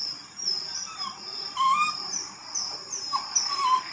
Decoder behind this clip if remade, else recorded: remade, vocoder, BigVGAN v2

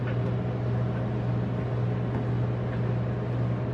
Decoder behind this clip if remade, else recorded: recorded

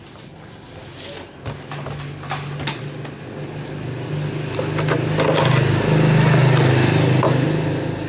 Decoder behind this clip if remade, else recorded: recorded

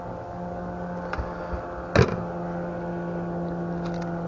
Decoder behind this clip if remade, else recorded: recorded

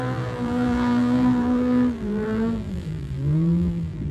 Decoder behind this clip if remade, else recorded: remade, vocoder, BigVGAN v2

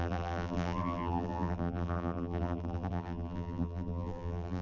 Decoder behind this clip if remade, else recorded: remade, vocoder, BigVGAN v2